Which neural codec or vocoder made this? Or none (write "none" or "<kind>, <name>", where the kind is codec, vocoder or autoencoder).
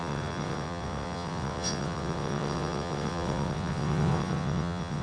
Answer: vocoder, WaveNeXt